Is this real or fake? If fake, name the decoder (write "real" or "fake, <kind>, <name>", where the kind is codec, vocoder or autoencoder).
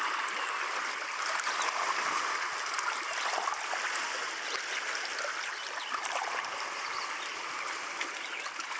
real